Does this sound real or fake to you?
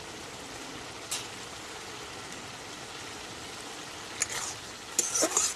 real